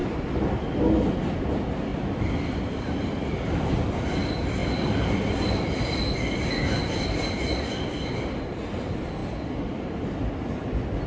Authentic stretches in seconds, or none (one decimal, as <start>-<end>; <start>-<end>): 0.0-1.9; 3.7-4.6; 5.7-11.1